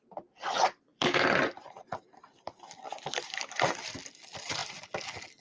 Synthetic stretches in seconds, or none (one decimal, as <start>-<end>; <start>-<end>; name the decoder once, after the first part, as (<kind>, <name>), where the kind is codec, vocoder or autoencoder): 0.9-4.1 (vocoder, BigVGAN v2)